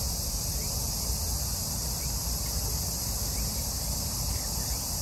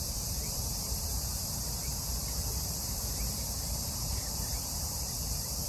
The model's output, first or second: second